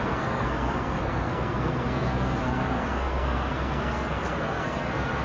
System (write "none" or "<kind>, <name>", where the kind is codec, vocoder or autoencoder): codec, SNAC